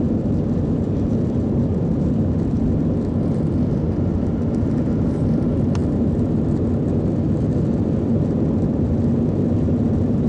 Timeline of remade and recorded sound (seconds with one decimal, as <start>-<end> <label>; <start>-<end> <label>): 0.0-10.3 recorded